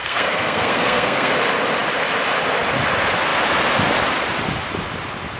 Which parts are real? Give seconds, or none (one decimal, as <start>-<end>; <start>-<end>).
1.3-5.4